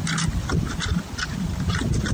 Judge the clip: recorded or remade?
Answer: recorded